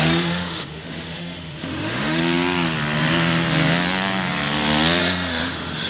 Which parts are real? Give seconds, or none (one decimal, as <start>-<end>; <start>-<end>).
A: 2.2-5.0